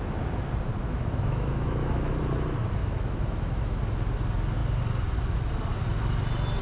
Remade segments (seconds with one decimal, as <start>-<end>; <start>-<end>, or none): 0.8-2.1; 2.8-3.8